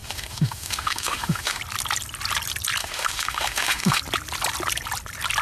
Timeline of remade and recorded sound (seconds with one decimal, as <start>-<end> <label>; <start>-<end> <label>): 0.0-1.6 remade; 1.6-2.8 recorded; 2.8-4.0 remade; 4.0-5.4 recorded